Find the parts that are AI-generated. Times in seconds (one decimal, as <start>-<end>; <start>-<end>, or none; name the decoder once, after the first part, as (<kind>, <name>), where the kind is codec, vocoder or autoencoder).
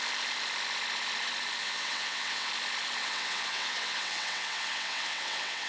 1.6-2.5 (vocoder, WaveNeXt); 3.0-5.7